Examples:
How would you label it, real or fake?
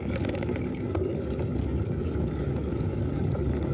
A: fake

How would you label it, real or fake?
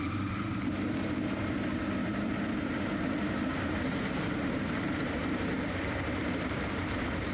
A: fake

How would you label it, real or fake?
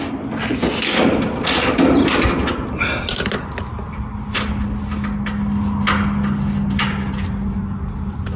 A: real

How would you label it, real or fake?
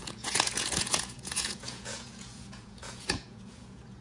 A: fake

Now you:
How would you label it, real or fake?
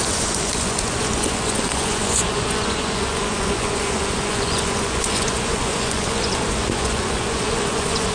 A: fake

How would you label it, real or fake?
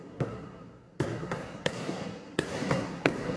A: fake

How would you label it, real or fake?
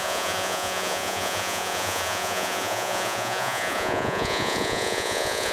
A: fake